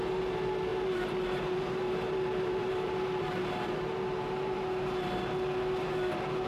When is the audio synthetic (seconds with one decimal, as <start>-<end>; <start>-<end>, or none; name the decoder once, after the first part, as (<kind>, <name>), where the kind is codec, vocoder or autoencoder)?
0.7-4.6 (vocoder, BigVGAN v2)